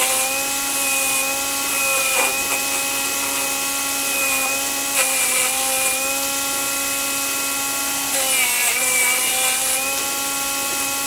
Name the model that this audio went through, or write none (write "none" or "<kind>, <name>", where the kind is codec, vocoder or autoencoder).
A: none